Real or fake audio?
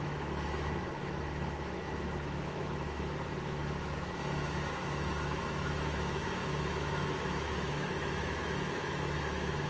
fake